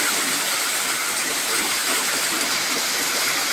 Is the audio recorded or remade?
remade